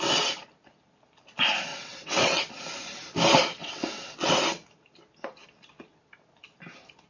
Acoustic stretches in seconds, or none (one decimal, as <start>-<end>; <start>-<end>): 0.0-1.7; 2.5-3.6; 4.3-7.1